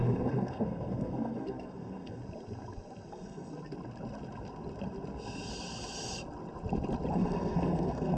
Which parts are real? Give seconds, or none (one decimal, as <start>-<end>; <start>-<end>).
2.2-3.1; 3.5-7.1